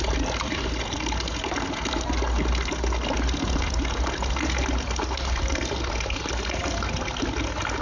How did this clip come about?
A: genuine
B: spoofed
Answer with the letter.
A